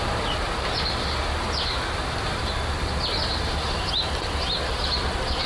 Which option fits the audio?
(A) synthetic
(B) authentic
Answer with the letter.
B